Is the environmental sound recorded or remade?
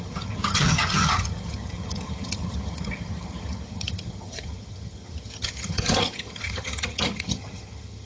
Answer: remade